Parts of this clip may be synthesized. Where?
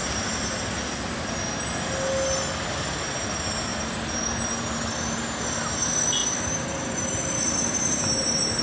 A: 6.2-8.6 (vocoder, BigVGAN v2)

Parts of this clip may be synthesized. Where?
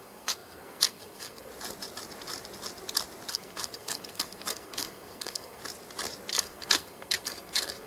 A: 0.0-1.5 (codec, SNAC); 3.3-5.6; 6.3-7.9